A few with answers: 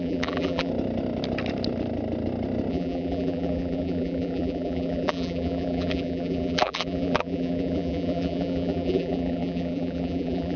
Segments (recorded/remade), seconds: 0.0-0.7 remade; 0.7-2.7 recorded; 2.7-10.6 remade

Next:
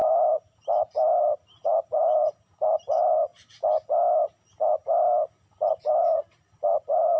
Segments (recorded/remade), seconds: 0.0-1.2 recorded; 1.2-3.3 remade; 3.3-5.7 recorded; 5.7-7.2 remade

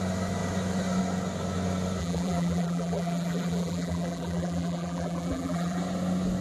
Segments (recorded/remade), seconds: 0.0-2.0 recorded; 2.0-5.8 remade; 5.8-6.4 recorded

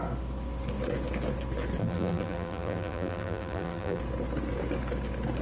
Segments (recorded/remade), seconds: 0.0-1.8 recorded; 1.8-4.0 remade; 4.0-5.4 recorded

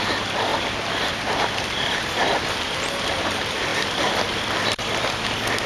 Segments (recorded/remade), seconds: 0.0-3.7 recorded; 3.7-5.0 remade; 5.0-5.7 recorded

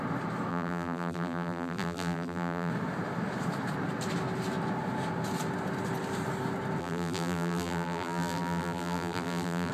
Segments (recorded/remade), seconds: 0.0-0.5 recorded; 0.5-2.7 remade; 2.7-6.8 recorded; 6.8-9.7 remade